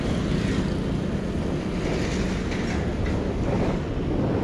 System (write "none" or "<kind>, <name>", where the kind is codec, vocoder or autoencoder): none